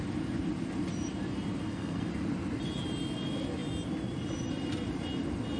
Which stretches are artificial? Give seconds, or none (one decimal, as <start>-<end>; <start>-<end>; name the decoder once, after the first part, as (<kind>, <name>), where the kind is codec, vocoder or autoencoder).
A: 1.6-2.1 (codec, SNAC)